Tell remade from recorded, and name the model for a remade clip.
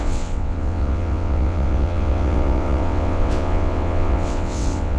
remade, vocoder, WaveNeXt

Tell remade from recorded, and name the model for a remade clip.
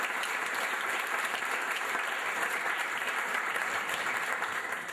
remade, vocoder, BigVGAN v2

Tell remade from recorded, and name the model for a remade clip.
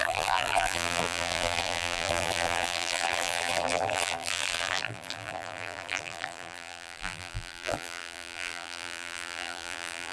remade, vocoder, BigVGAN v2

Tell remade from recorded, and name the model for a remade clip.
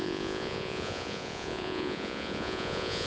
remade, vocoder, Vocos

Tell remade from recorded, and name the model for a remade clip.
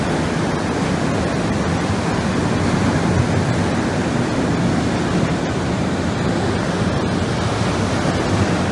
recorded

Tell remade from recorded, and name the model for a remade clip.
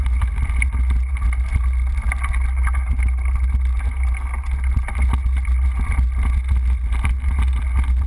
recorded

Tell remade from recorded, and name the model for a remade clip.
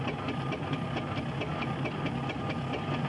recorded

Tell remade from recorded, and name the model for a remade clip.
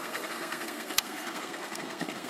remade, codec, SNAC